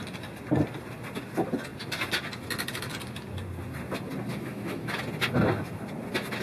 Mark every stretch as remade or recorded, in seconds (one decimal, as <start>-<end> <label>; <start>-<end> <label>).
0.0-4.3 recorded; 4.3-5.0 remade; 5.0-6.4 recorded